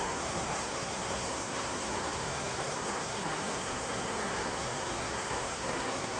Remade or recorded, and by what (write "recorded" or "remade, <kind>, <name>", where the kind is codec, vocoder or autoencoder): remade, codec, SNAC